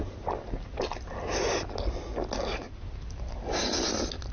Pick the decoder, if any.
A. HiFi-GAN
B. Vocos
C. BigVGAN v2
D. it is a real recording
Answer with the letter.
D